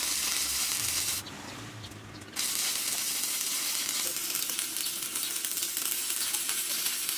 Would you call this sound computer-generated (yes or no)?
no